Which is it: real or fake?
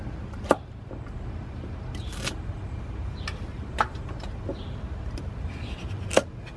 real